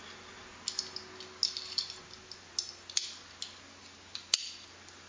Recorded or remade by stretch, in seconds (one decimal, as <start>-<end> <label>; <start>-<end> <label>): 0.0-5.1 recorded